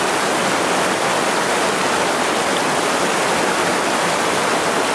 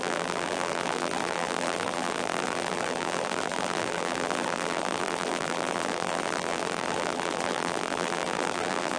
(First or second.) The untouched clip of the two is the first